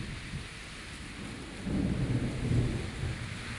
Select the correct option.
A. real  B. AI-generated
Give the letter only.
A